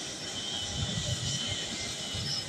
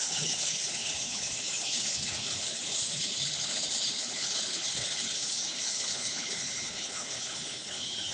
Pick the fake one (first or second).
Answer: second